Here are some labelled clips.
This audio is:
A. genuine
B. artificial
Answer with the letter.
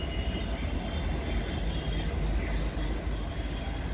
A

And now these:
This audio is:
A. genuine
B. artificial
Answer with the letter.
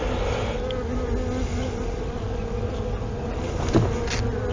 A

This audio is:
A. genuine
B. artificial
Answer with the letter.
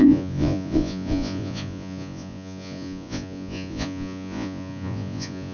B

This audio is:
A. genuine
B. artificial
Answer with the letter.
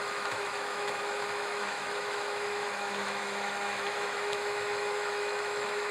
B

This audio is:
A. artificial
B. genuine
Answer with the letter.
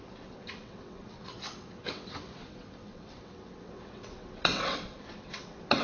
A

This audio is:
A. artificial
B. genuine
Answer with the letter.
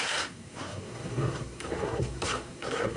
A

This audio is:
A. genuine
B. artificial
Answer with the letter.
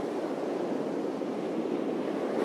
A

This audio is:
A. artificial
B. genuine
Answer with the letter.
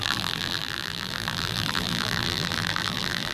A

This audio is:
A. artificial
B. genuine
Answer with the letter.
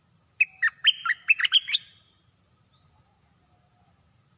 B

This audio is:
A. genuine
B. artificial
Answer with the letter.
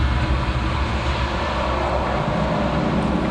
A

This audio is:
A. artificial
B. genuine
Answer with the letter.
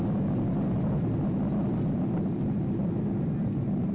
B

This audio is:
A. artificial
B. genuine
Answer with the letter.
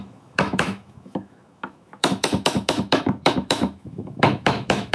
A